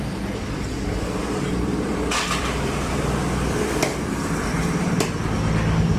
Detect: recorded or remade remade